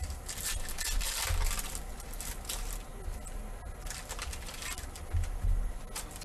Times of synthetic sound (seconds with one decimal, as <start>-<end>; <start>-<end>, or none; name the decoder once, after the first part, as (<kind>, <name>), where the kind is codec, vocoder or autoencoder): none